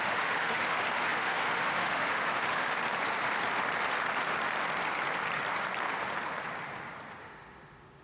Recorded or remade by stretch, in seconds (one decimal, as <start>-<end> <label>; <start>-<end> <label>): 0.0-2.6 remade; 2.6-7.2 recorded; 7.2-8.0 remade